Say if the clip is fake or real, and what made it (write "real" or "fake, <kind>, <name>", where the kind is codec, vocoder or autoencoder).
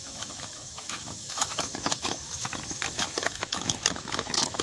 fake, autoencoder, DAC-VAE